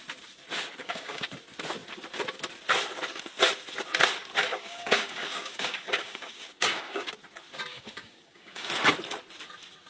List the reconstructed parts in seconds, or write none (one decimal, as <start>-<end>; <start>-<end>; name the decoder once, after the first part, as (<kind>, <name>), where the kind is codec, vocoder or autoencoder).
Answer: 0.8-1.3 (codec, DAC); 4.5-7.1; 7.7-8.7